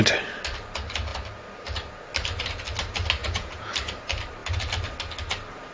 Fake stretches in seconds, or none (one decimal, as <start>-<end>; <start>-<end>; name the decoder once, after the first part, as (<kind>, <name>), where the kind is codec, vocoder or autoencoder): 3.2-3.7 (vocoder, Vocos)